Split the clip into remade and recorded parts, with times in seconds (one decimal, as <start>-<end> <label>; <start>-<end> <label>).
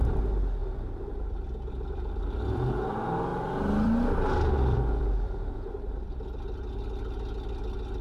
0.0-0.6 recorded; 0.6-2.8 remade; 2.8-3.3 recorded; 3.3-6.8 remade; 6.8-8.0 recorded